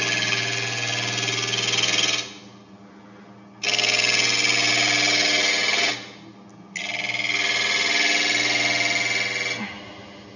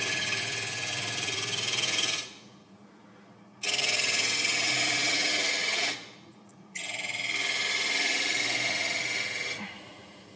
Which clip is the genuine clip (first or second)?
first